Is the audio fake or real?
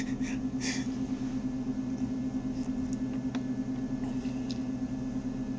real